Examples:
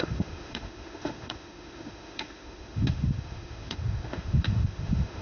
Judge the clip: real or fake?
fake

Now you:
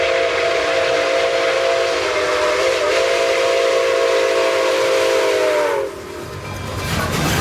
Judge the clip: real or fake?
real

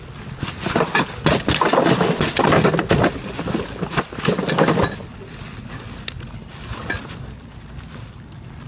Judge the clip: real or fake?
real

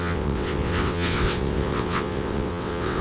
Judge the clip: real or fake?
fake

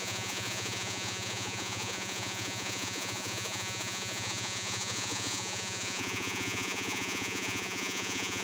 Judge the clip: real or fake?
fake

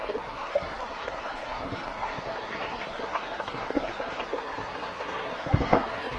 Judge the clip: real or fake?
fake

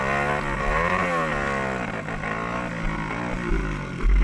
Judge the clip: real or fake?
real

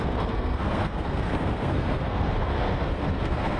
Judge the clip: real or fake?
fake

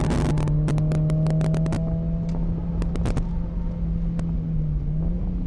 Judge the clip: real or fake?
real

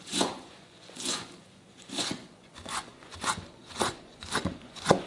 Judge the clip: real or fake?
fake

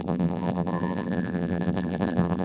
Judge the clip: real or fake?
fake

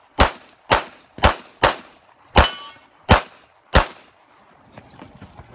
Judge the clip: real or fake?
real